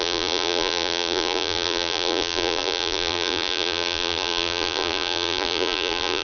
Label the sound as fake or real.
fake